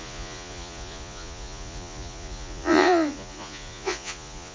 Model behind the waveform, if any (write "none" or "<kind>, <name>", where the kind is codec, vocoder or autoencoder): vocoder, Vocos